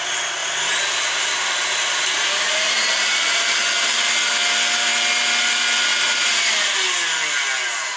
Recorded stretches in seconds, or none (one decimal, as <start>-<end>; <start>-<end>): 0.0-0.4; 3.6-5.9; 6.5-8.0